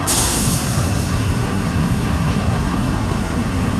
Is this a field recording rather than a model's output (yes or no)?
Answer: no